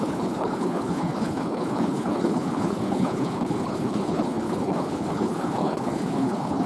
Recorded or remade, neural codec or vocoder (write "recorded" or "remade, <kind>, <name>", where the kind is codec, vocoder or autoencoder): remade, codec, HILCodec